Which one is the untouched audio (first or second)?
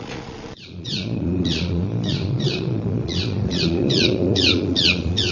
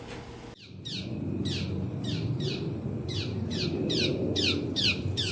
second